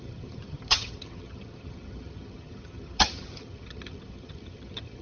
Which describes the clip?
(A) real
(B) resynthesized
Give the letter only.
B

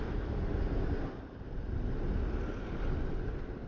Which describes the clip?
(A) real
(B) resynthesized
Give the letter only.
A